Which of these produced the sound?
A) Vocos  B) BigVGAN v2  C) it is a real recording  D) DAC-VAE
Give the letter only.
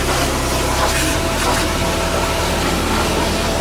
C